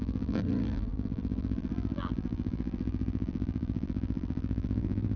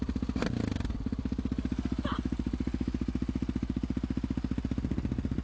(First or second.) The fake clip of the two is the first